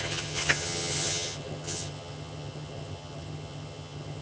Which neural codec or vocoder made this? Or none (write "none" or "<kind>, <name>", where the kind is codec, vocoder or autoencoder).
vocoder, HiFi-GAN